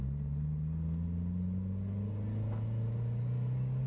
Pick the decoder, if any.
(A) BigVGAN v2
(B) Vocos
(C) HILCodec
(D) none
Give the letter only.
D